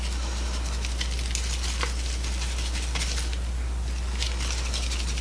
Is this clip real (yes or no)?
yes